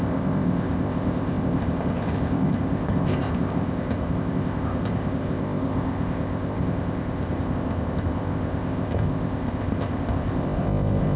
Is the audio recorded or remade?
remade